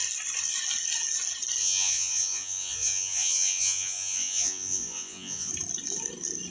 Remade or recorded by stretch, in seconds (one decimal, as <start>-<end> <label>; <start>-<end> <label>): 0.0-1.6 recorded; 1.6-5.5 remade; 5.5-6.5 recorded